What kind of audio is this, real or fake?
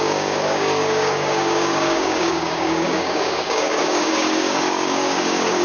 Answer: fake